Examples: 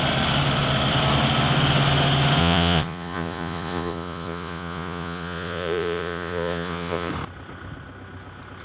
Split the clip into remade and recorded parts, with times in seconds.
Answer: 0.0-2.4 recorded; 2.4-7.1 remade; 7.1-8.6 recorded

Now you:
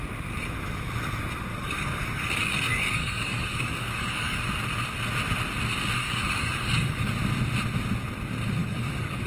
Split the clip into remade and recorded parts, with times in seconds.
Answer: 0.0-1.5 recorded; 1.5-4.4 remade; 4.4-6.0 recorded; 6.0-7.1 remade; 7.1-8.6 recorded; 8.6-9.3 remade

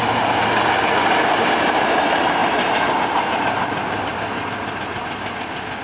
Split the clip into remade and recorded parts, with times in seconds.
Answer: 0.0-5.8 recorded

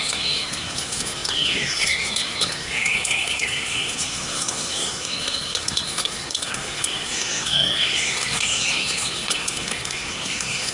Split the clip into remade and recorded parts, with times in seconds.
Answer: 0.0-10.7 remade

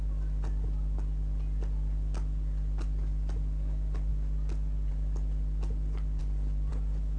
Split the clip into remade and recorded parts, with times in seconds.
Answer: 0.0-7.2 recorded

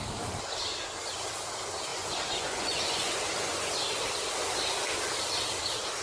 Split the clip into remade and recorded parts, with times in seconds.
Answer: 0.0-1.9 recorded; 1.9-3.7 remade; 3.7-6.0 recorded

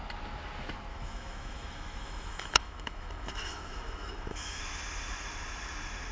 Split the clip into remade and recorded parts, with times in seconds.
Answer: 0.0-0.9 recorded; 0.9-4.6 remade; 4.6-6.1 recorded

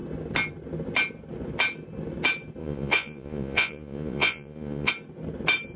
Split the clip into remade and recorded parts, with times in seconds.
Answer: 0.0-2.6 recorded; 2.6-4.9 remade; 4.9-5.8 recorded